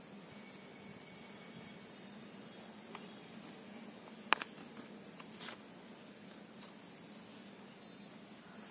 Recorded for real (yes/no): yes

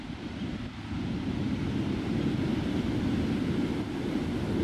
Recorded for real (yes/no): yes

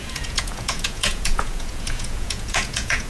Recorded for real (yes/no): no